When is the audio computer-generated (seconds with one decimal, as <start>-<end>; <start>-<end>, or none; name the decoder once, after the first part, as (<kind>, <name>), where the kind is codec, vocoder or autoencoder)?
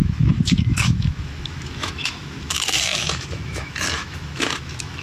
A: 0.0-5.0 (autoencoder, DAC-VAE)